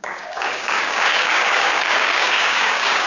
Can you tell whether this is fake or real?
fake